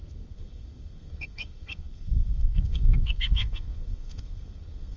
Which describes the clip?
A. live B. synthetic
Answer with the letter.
B